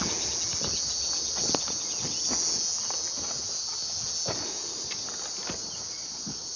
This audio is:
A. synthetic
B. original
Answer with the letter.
B